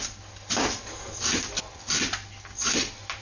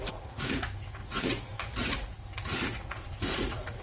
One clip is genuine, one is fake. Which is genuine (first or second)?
first